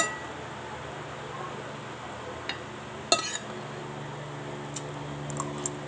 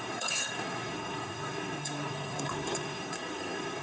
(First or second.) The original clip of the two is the first